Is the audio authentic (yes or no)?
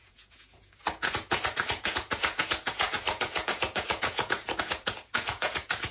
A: no